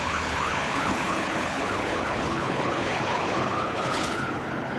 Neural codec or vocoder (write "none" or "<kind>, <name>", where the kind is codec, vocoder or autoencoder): codec, HILCodec